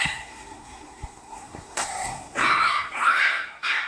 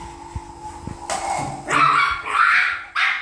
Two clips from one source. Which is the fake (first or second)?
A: first